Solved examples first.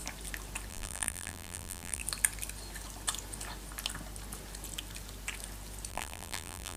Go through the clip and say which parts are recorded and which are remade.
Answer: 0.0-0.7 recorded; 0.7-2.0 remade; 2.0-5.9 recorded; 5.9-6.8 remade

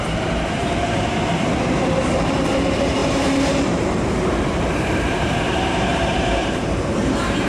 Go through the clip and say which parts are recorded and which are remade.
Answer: 0.0-7.5 remade

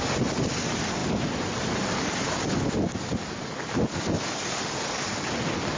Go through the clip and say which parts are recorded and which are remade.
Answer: 0.0-5.8 recorded

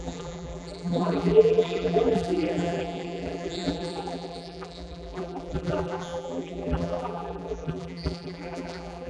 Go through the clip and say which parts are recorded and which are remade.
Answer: 0.0-9.1 remade

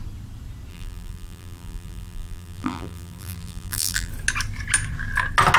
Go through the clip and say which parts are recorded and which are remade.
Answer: 0.0-0.7 recorded; 0.7-4.1 remade; 4.1-5.6 recorded